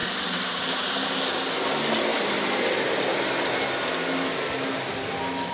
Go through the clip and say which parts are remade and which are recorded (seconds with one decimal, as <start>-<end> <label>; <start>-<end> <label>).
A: 0.0-5.5 recorded